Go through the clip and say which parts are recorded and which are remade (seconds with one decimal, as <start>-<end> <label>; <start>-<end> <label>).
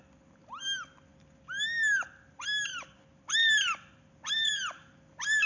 0.0-5.5 recorded